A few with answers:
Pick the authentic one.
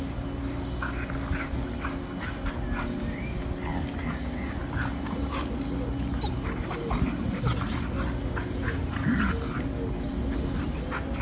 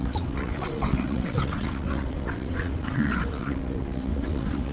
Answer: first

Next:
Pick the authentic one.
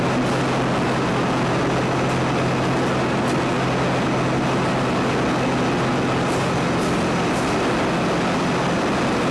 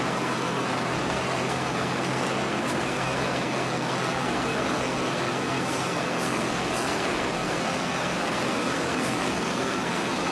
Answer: first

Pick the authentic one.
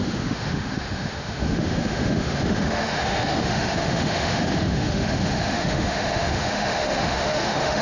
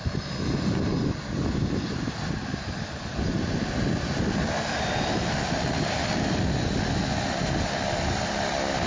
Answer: second